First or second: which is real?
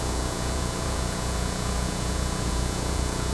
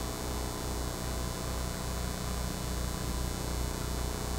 second